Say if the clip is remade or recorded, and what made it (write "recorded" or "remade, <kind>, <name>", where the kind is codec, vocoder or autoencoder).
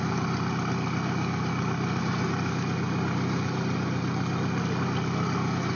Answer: recorded